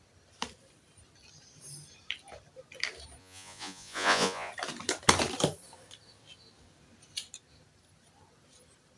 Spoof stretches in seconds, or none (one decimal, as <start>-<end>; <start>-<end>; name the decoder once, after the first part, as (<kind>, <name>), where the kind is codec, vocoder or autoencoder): 3.2-4.5 (vocoder, Vocos)